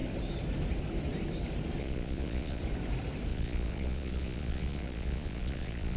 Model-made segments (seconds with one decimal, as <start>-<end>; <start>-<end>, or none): 1.8-2.6; 3.3-6.0